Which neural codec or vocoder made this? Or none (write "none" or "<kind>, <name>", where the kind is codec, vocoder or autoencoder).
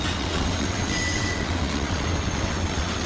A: vocoder, WaveNeXt